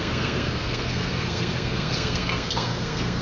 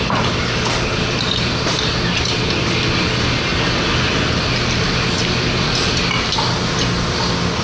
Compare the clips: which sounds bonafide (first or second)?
second